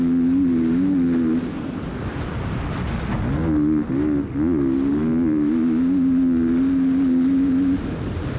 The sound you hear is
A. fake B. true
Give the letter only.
B